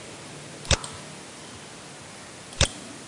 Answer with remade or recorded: recorded